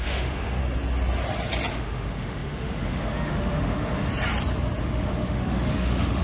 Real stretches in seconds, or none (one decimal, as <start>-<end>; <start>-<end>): 0.6-1.7; 4.1-4.8